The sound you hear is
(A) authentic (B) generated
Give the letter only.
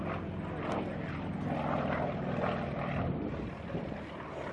A